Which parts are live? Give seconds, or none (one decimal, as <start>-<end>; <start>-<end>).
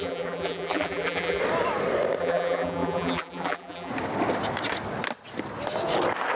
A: 1.4-2.2; 3.9-6.4